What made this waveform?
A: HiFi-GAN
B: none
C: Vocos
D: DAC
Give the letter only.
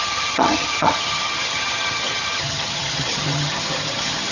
A